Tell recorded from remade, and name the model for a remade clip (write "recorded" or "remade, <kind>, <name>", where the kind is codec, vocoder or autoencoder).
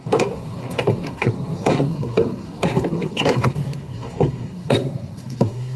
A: remade, codec, SNAC